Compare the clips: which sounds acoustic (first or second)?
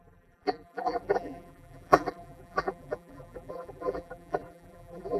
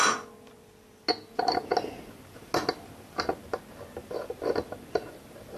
second